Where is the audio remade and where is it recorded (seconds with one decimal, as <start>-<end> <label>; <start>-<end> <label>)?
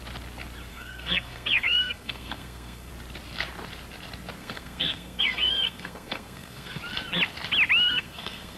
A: 0.0-0.7 recorded; 0.7-2.9 remade; 2.9-4.4 recorded; 4.4-6.8 remade; 6.8-7.9 recorded; 7.9-8.6 remade